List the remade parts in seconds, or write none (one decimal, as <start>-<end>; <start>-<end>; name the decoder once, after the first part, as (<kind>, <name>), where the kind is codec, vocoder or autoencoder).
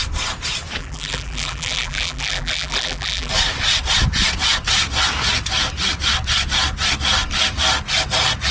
0.8-3.3 (vocoder, BigVGAN v2)